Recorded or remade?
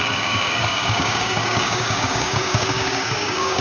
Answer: remade